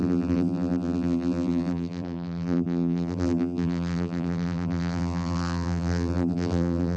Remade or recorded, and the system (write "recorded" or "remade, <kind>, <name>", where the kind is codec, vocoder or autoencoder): remade, vocoder, BigVGAN v2